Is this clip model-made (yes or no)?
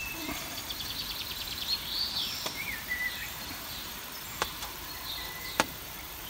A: yes